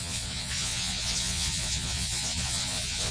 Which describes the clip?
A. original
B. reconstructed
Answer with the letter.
B